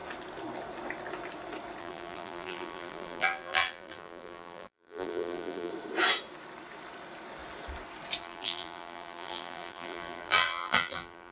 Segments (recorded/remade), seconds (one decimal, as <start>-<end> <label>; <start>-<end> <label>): 0.0-1.8 recorded; 1.8-5.7 remade; 5.7-8.2 recorded; 8.2-11.3 remade